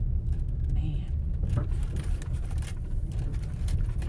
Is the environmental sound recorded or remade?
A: recorded